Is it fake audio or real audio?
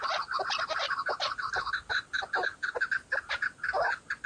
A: real